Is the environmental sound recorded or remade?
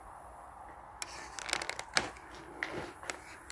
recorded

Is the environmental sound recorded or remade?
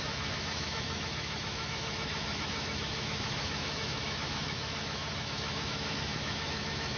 remade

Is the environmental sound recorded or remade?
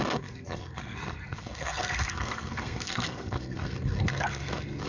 remade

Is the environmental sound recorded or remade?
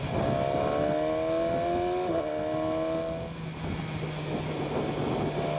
recorded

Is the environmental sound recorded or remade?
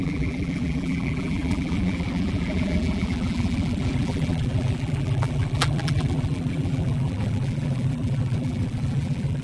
remade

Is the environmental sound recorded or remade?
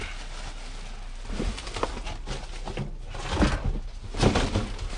recorded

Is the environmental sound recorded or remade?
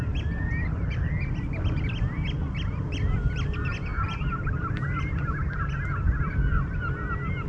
recorded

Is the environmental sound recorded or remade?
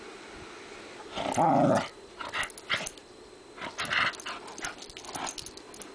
recorded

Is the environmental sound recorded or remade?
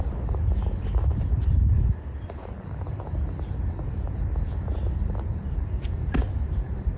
recorded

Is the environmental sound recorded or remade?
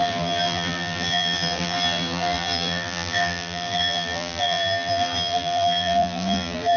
remade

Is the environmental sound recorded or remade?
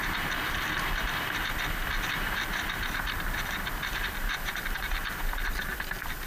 recorded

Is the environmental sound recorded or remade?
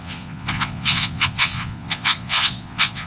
remade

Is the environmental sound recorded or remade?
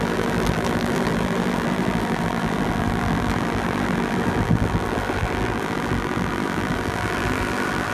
remade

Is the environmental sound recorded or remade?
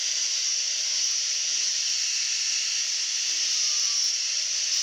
remade